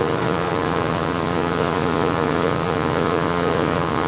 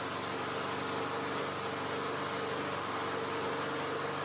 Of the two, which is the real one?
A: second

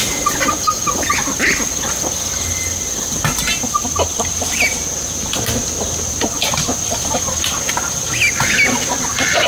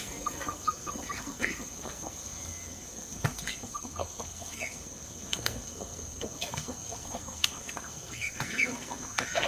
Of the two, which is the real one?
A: first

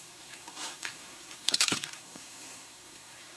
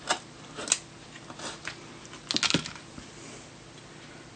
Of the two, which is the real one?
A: second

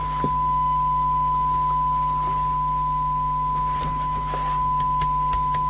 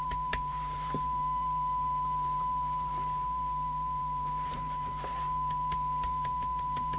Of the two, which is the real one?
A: first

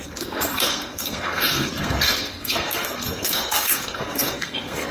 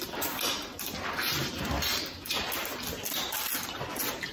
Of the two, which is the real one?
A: second